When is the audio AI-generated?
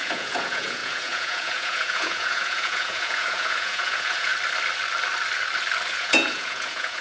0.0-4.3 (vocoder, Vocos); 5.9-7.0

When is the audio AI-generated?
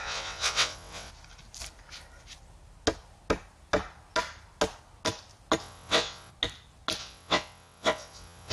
0.0-1.1 (vocoder, WaveNeXt); 5.6-6.3; 7.0-8.5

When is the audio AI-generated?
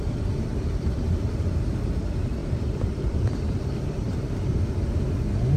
0.5-1.2 (vocoder, BigVGAN v2); 2.4-4.6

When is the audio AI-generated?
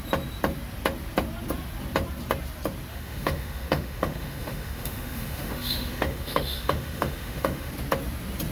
2.9-7.7 (autoencoder, DAC-VAE)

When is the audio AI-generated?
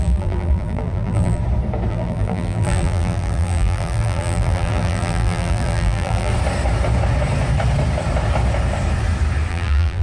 0.0-1.4 (vocoder, BigVGAN v2); 1.9-6.3; 9.5-10.0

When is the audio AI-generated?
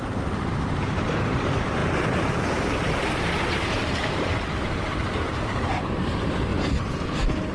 0.0-6.5 (vocoder, BigVGAN v2)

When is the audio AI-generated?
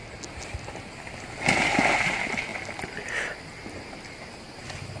none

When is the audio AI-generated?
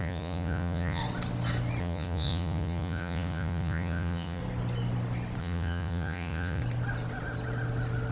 0.0-1.0 (vocoder, Vocos); 1.8-4.4; 5.4-6.6